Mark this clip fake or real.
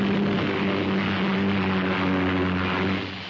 real